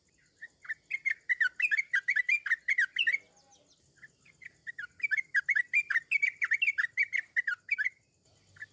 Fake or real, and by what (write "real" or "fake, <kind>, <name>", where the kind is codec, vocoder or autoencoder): real